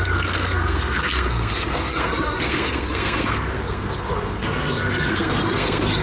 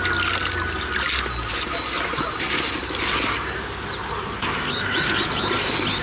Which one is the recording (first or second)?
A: second